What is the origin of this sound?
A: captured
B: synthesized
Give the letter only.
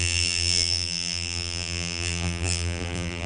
B